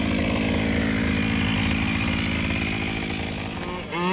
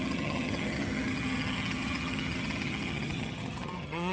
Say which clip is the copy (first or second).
second